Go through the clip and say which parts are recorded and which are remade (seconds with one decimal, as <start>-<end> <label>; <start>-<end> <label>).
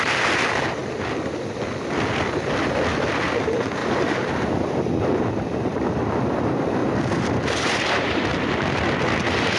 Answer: 0.0-3.8 recorded; 3.8-5.2 remade; 5.2-6.8 recorded; 6.8-8.2 remade; 8.2-9.6 recorded